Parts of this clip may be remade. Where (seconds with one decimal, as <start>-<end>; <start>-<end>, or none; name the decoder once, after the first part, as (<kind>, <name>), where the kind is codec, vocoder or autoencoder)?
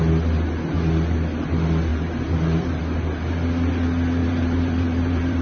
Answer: 1.9-2.8 (vocoder, BigVGAN v2); 4.2-5.4